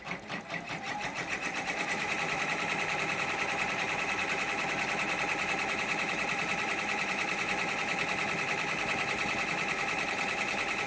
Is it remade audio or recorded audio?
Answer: remade